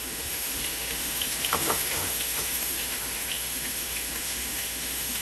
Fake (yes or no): yes